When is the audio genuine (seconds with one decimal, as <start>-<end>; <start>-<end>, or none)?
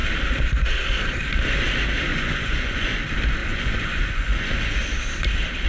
0.0-2.1; 3.0-3.4; 4.7-5.7